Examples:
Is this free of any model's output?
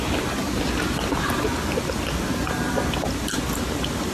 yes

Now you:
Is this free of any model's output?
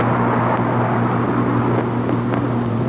yes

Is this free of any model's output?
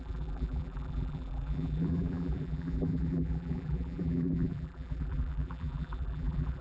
no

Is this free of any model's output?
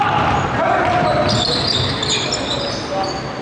yes